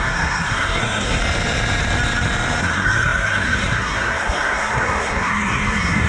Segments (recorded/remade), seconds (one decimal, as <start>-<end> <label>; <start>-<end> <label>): 0.0-1.2 remade; 1.2-2.6 recorded; 2.6-6.1 remade

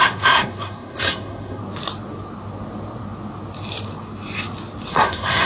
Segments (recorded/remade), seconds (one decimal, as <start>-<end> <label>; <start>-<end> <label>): 0.0-1.6 remade; 1.6-4.9 recorded; 4.9-5.5 remade

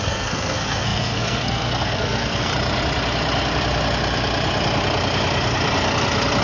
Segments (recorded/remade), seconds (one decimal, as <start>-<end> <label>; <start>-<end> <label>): 0.0-2.5 remade; 2.5-6.4 recorded

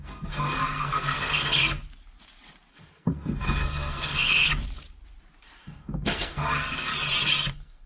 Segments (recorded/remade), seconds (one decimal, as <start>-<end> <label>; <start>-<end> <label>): 0.0-1.6 remade; 1.6-2.7 recorded; 2.7-4.5 remade; 4.5-5.6 recorded; 5.6-6.9 remade; 6.9-7.5 recorded; 7.5-7.9 remade

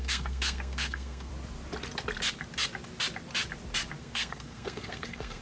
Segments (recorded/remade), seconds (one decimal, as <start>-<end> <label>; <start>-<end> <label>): 0.0-1.3 remade; 1.3-4.0 recorded; 4.0-5.4 remade

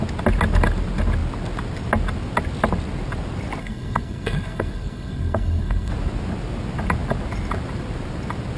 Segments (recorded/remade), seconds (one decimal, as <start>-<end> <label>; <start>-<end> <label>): 0.0-3.6 recorded; 3.6-5.9 remade; 5.9-8.6 recorded